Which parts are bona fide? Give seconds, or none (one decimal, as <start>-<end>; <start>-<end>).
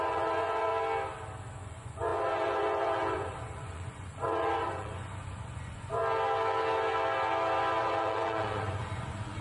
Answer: 0.7-1.5; 6.0-7.8